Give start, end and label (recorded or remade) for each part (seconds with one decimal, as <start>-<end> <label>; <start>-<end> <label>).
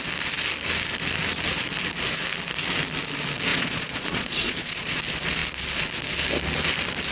0.0-3.5 recorded; 3.5-5.0 remade; 5.0-7.1 recorded